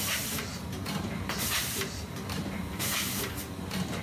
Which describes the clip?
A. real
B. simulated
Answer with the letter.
B